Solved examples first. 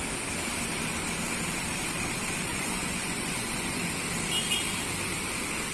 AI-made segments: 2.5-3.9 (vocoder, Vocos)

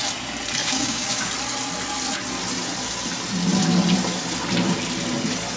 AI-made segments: 0.6-1.3 (codec, DAC)

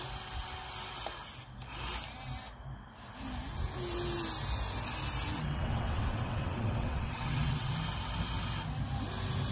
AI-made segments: 5.3-7.7 (vocoder, WaveNeXt)